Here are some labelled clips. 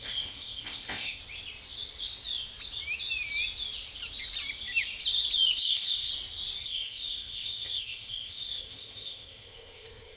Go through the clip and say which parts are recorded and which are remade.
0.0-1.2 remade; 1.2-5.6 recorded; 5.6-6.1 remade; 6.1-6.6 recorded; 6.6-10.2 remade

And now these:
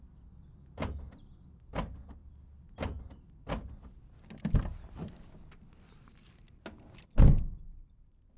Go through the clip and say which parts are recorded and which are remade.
0.0-8.4 recorded